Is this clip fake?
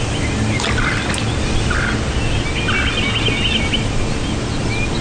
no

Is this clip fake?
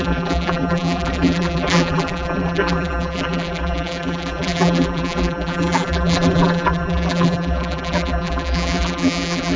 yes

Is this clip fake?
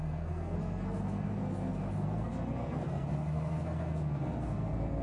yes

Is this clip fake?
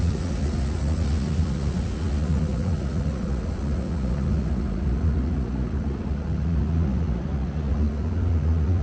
yes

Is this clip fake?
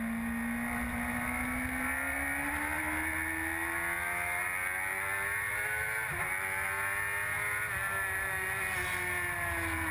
no